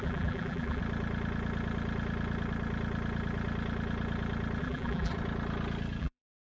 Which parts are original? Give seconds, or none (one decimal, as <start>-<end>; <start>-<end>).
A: 0.8-4.6; 5.1-6.0